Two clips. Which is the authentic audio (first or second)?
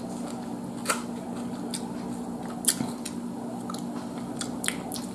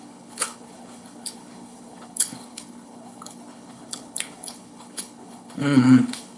first